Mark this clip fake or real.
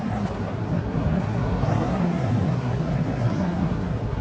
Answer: fake